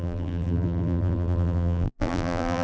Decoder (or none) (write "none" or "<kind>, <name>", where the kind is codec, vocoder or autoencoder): vocoder, BigVGAN v2